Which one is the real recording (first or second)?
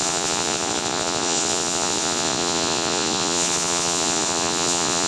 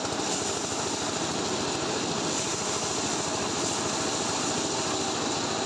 second